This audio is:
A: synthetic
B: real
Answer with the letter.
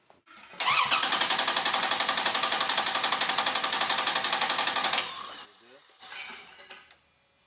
B